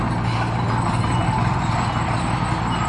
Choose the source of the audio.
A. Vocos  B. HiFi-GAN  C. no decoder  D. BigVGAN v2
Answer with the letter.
C